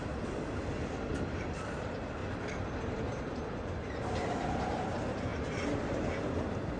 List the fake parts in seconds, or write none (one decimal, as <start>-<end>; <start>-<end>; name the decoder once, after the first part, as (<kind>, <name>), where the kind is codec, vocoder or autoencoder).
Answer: 0.0-2.2 (vocoder, BigVGAN v2); 3.8-5.3